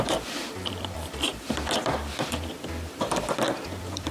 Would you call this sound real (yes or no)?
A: no